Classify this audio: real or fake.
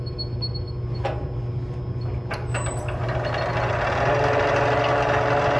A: real